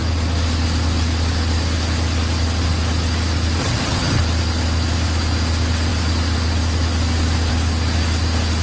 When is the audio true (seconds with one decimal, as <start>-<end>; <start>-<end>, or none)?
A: 0.0-3.6; 4.2-8.6